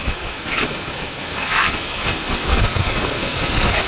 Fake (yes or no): yes